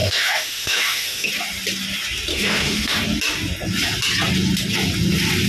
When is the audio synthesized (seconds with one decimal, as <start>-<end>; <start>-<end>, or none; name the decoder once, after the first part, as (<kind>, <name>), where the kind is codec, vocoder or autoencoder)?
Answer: 0.0-1.3 (autoencoder, DAC-VAE); 2.3-3.0